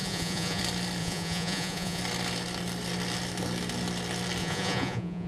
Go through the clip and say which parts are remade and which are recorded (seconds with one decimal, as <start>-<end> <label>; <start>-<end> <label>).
0.0-0.6 remade; 0.6-1.0 recorded; 1.0-2.0 remade; 2.0-4.4 recorded; 4.4-5.3 remade

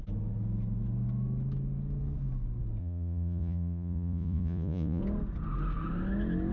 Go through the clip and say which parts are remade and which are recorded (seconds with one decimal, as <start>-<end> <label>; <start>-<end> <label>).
0.0-2.8 recorded; 2.8-5.0 remade; 5.0-6.5 recorded

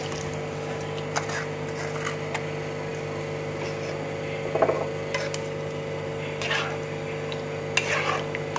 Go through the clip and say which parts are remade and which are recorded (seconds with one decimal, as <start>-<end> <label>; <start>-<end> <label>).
0.0-8.6 recorded

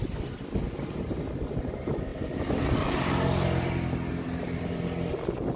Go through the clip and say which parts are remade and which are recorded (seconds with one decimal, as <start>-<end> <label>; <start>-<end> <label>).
0.0-5.6 recorded

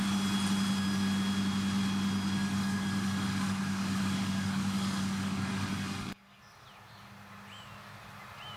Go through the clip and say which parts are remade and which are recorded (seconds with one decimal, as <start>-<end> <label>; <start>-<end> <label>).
0.0-2.6 recorded; 2.6-6.4 remade; 6.4-8.6 recorded

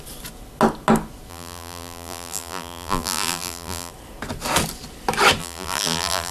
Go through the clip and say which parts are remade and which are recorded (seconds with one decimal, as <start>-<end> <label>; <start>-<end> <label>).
0.0-1.3 recorded; 1.3-3.9 remade; 3.9-5.4 recorded; 5.4-6.3 remade